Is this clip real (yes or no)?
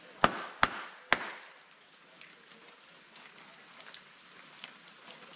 yes